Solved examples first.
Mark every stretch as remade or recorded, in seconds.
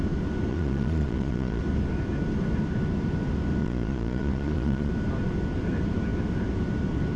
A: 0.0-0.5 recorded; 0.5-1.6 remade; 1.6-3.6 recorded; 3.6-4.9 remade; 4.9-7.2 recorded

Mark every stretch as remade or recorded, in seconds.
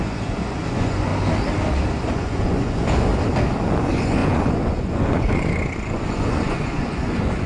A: 0.0-1.1 remade; 1.1-2.1 recorded; 2.1-3.1 remade; 3.1-3.8 recorded; 3.8-7.5 remade